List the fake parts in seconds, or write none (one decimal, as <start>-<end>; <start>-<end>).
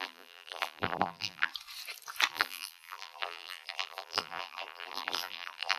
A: 0.0-1.5; 2.3-5.8